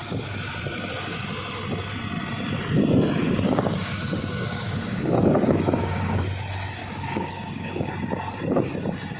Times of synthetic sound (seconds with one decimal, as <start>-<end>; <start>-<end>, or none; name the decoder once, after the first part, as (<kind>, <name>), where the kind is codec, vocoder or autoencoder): 3.2-6.2 (codec, DAC); 6.8-7.9